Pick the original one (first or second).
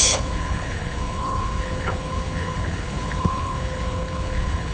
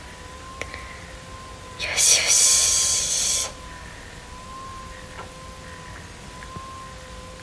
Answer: second